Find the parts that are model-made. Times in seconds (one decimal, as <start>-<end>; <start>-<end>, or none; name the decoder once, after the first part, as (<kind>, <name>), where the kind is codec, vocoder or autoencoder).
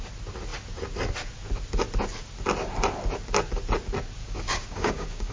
4.2-5.3 (codec, DAC)